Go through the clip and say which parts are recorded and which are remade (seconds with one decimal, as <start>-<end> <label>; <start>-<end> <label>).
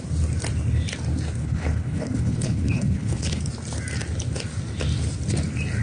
0.0-1.4 recorded; 1.4-3.4 remade; 3.4-5.8 recorded